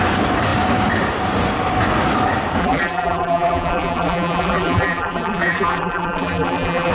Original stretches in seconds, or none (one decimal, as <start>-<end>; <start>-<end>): 0.0-2.6